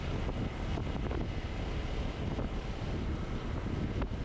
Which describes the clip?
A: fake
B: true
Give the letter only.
B